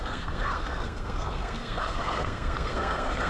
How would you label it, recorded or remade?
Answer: remade